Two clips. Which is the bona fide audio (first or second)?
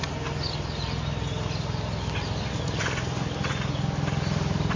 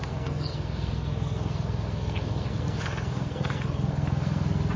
first